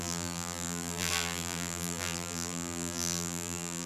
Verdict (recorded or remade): remade